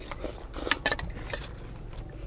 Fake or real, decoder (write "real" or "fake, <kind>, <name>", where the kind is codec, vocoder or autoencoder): real